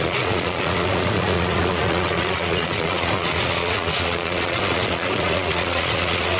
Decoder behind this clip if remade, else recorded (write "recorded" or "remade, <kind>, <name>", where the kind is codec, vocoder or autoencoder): remade, vocoder, Vocos